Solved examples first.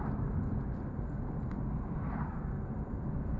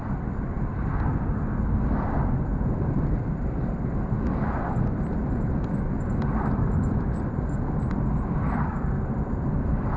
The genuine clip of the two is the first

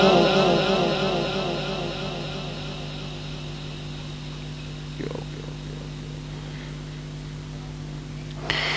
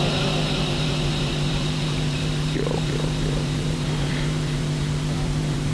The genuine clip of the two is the first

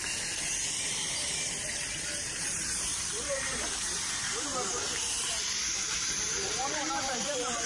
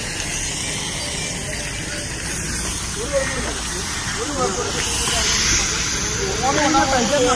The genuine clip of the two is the second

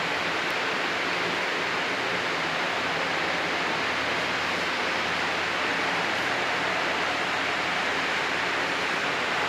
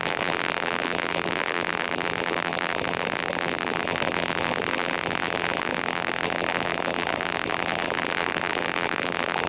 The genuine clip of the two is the first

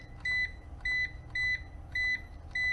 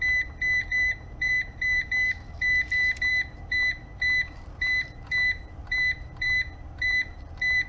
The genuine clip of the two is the first